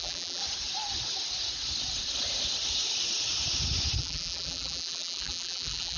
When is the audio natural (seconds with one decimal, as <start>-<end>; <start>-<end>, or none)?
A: 0.4-4.0